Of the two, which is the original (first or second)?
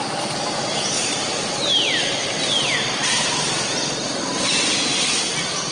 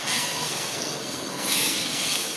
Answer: first